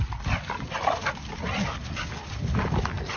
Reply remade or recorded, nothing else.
recorded